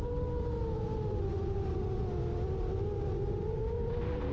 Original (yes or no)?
yes